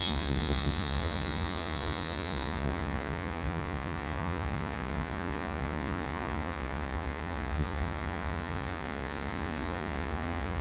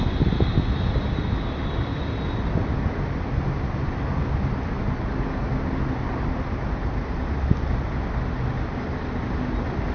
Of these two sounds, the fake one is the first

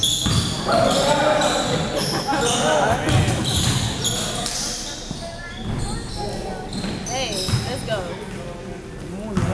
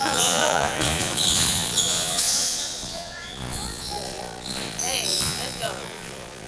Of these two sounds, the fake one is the second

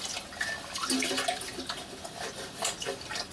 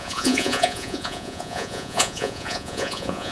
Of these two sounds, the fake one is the second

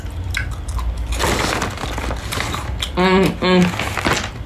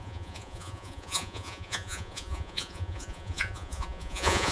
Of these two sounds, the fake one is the second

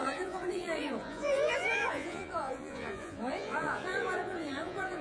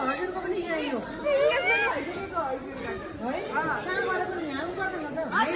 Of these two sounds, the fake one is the first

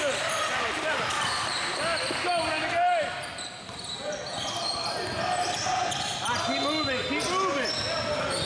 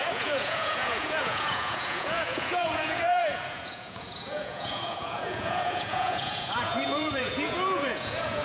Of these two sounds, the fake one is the second